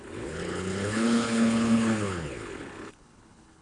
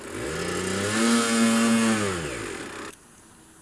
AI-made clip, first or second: first